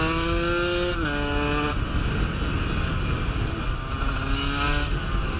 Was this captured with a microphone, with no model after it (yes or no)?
yes